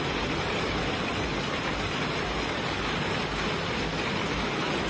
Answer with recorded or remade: recorded